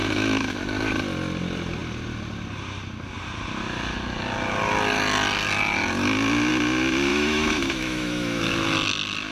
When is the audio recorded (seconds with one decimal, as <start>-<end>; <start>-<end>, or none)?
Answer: 0.6-7.1; 8.4-9.3